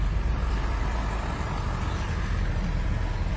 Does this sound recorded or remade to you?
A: recorded